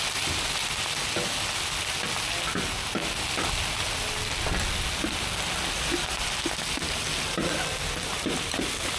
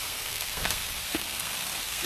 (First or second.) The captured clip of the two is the first